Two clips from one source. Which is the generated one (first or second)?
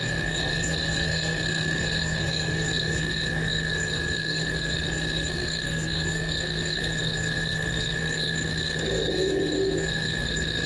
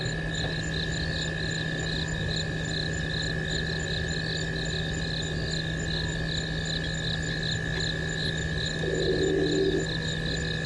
first